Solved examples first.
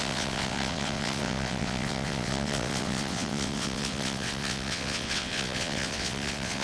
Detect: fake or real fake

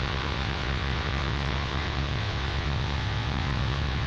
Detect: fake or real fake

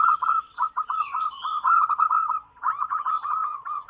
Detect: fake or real fake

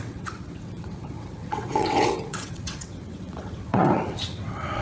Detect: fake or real fake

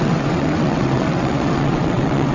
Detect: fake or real fake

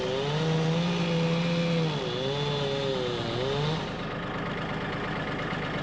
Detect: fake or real real